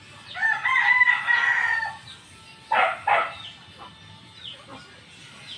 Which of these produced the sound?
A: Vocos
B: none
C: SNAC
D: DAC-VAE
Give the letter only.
B